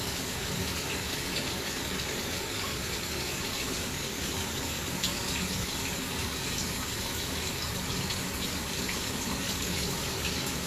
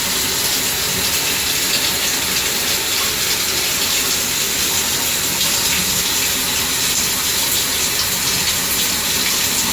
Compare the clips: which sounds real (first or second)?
second